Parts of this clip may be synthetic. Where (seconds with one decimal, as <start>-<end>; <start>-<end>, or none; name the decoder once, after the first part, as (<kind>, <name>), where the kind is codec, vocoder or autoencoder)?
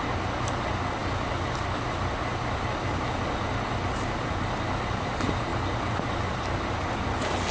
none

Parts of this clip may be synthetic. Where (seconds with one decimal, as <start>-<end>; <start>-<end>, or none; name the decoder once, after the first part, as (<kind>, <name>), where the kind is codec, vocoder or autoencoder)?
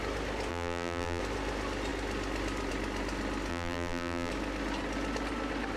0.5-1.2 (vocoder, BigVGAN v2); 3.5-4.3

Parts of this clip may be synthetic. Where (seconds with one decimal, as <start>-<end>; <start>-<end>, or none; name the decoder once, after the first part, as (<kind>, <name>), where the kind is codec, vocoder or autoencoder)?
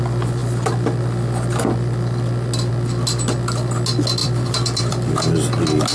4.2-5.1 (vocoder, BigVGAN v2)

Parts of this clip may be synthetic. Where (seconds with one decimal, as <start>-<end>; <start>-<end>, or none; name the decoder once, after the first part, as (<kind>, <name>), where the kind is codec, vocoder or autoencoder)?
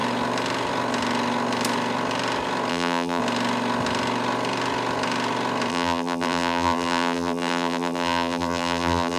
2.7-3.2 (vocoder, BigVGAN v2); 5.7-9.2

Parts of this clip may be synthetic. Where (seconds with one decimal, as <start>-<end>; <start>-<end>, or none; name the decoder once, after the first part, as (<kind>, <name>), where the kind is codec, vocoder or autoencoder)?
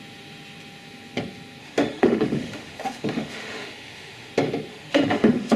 1.6-4.3 (autoencoder, DAC-VAE); 4.7-5.6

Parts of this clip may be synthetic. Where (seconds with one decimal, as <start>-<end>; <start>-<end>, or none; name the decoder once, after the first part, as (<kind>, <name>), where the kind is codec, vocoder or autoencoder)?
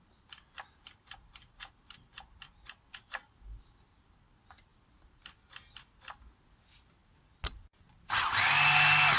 none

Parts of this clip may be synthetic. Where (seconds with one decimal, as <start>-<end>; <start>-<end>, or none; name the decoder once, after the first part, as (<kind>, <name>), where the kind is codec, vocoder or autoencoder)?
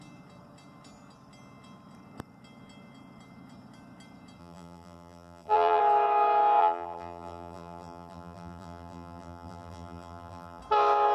4.4-5.8 (vocoder, BigVGAN v2); 6.6-10.6